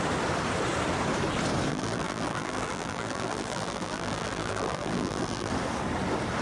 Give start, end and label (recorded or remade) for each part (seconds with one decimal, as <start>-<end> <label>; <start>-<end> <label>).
0.0-1.7 recorded; 1.7-5.5 remade; 5.5-6.4 recorded